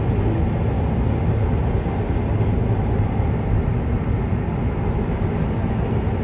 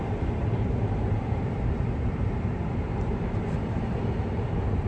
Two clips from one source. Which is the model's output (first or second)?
second